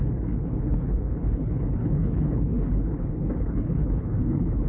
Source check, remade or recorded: remade